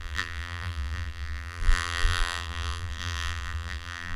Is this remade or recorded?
remade